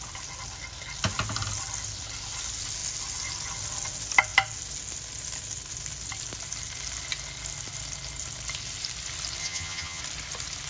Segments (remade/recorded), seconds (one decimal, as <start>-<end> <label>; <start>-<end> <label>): 0.0-9.4 recorded; 9.4-10.0 remade; 10.0-10.7 recorded